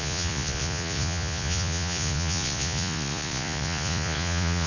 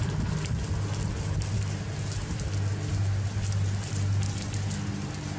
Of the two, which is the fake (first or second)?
first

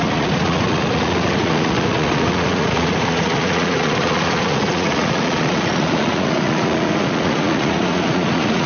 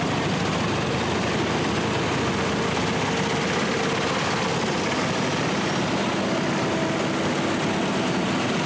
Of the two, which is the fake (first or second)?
first